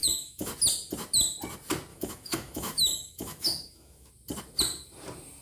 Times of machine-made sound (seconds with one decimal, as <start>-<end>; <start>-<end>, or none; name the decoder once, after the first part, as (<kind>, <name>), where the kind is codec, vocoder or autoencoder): 0.0-0.5 (autoencoder, DAC-VAE); 1.9-4.1